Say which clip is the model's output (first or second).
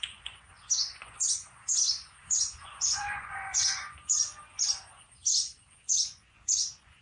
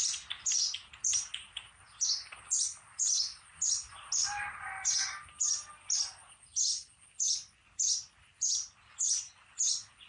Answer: first